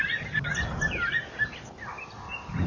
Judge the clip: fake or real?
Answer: real